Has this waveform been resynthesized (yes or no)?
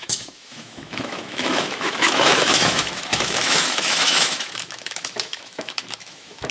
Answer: yes